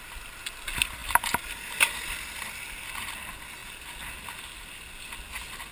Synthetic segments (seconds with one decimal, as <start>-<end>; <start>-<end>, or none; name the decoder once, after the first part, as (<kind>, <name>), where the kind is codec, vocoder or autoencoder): 1.0-2.6 (vocoder, BigVGAN v2)